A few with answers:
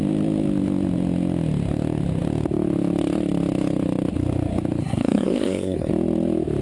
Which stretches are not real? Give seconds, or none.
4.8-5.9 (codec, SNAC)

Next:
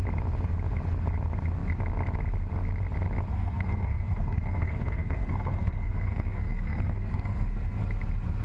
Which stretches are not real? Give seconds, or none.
3.3-7.8 (codec, SNAC)

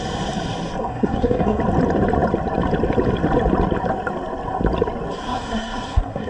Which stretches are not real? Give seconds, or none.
0.8-1.6 (codec, SNAC); 5.2-6.3

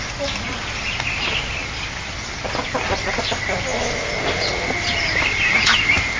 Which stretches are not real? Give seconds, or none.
none

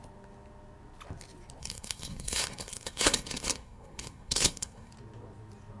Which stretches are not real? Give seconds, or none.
1.6-4.9 (codec, SNAC)

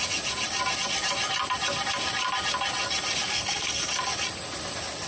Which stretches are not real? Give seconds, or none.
3.3-3.9 (codec, SNAC)